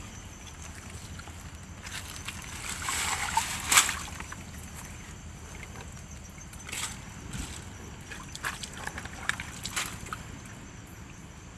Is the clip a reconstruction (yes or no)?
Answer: no